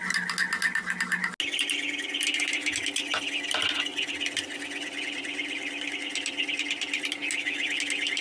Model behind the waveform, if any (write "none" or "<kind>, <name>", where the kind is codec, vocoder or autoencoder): none